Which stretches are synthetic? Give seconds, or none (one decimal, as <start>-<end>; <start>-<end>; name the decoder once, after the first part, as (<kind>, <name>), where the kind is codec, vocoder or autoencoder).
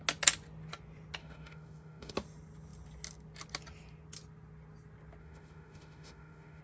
1.2-2.1 (autoencoder, DAC-VAE); 5.2-6.6